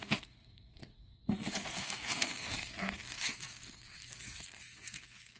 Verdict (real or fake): fake